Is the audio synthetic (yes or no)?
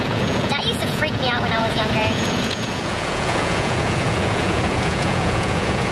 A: yes